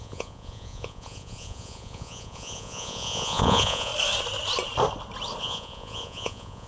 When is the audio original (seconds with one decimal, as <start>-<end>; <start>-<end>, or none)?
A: 3.9-5.4

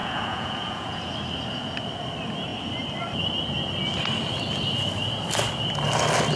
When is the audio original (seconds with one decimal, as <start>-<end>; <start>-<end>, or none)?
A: 1.0-6.4

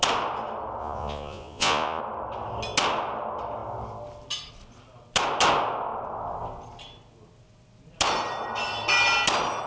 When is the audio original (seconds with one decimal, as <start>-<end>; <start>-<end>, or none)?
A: 0.0-0.8; 2.0-9.7

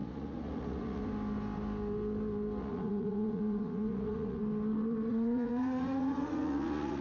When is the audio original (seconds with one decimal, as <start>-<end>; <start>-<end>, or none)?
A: 1.0-2.6; 4.4-5.1

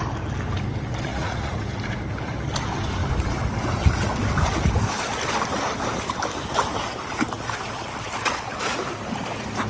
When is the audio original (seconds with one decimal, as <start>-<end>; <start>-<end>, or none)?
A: 0.0-1.1; 1.6-9.7